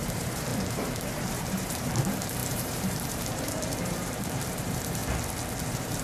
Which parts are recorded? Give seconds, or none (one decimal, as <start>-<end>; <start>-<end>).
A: 5.0-5.6